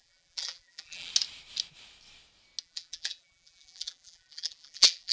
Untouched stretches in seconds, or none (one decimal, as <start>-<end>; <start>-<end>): 1.1-2.6